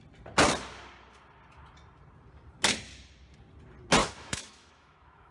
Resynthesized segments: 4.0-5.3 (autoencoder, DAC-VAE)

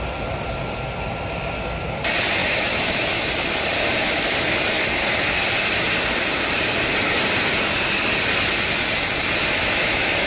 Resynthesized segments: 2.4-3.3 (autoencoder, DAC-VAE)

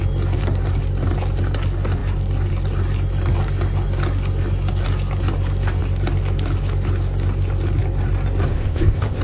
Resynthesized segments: 8.5-9.2 (codec, ZipCodec)

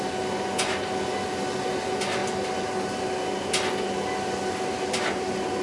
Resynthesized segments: none